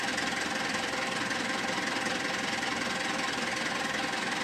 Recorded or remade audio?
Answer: recorded